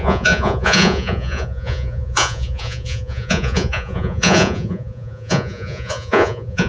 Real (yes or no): no